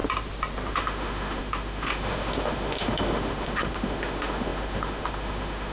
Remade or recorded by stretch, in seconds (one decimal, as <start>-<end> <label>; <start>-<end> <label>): 0.0-0.7 recorded; 0.7-5.7 remade